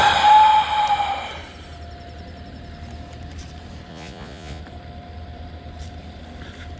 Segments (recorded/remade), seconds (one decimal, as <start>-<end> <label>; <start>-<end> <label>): 0.0-3.9 recorded; 3.9-4.6 remade; 4.6-6.8 recorded